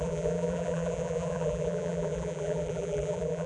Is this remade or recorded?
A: remade